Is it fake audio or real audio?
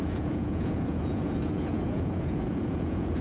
fake